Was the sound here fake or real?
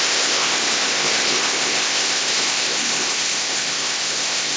fake